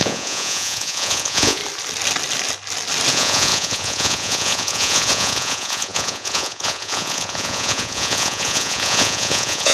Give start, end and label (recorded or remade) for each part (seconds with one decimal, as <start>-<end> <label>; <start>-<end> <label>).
0.0-1.6 remade; 1.6-3.1 recorded; 3.1-9.7 remade